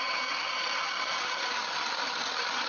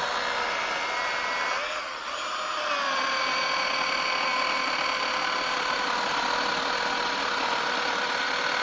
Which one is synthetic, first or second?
first